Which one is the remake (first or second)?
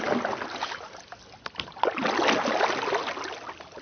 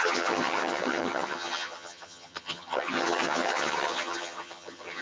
second